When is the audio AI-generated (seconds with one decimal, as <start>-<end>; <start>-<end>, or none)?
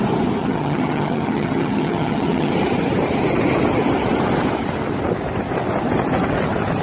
0.4-2.5